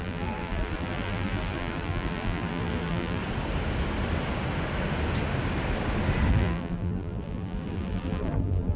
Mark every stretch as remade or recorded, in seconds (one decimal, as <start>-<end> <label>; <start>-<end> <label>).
0.0-3.2 remade; 3.2-6.3 recorded; 6.3-8.8 remade